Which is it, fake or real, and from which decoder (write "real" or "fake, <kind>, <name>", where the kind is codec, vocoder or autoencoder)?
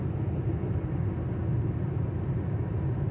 real